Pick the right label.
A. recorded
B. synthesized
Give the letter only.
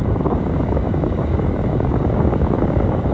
B